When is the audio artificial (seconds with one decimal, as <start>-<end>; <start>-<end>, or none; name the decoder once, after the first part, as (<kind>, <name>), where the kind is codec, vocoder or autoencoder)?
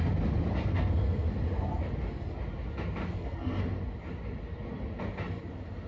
0.6-1.3 (codec, SNAC); 3.0-3.6